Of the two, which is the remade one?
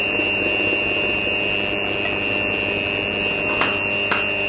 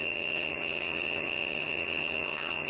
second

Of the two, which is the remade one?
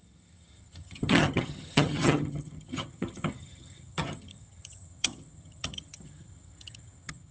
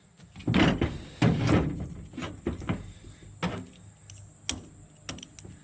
first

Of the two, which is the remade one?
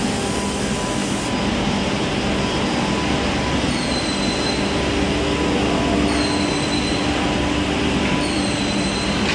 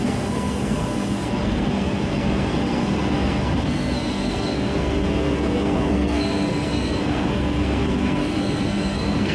second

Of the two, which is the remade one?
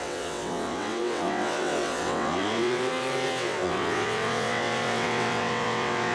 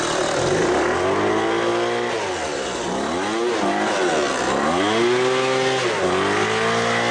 first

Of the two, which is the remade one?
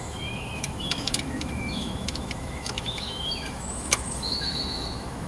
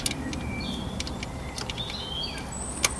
first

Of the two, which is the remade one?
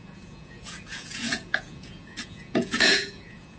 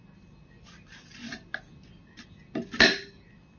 first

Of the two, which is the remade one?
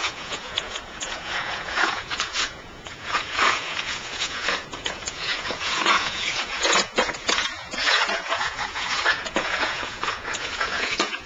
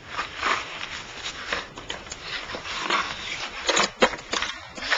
first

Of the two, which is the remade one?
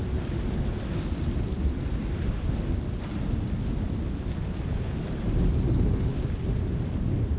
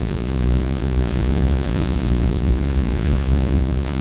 second